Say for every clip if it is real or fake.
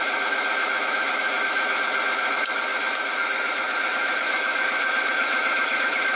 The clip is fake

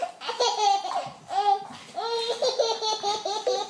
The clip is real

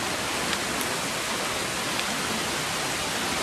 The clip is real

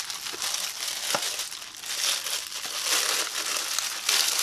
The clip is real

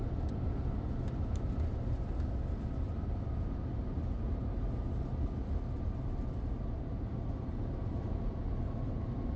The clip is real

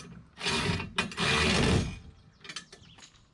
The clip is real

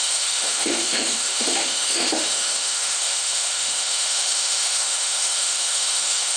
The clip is fake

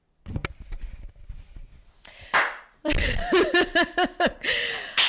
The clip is real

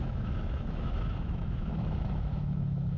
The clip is fake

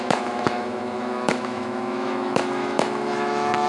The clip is fake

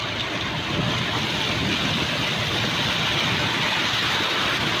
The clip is real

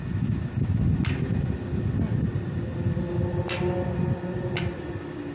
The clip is real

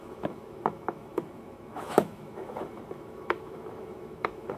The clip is fake